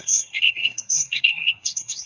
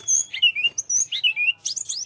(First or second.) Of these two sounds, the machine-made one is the first